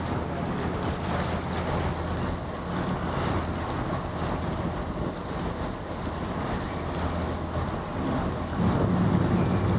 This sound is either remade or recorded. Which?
recorded